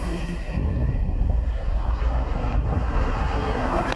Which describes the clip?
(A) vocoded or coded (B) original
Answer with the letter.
A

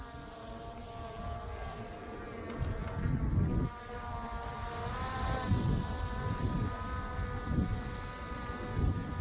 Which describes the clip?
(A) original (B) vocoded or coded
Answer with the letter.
A